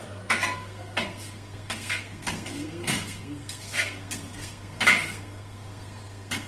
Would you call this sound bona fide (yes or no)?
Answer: no